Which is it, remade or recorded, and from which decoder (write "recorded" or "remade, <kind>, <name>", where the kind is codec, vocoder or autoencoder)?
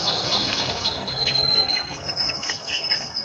remade, codec, SNAC